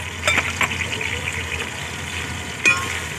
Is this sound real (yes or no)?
yes